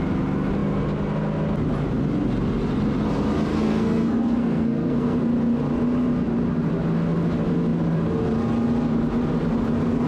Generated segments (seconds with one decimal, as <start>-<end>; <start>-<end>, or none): 3.5-5.2